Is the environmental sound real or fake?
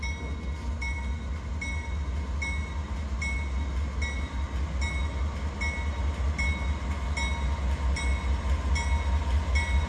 real